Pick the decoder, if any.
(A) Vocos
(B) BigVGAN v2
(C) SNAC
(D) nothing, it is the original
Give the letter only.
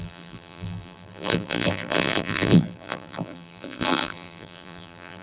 B